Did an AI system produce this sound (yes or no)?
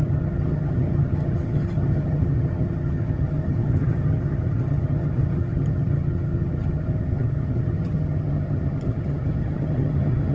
yes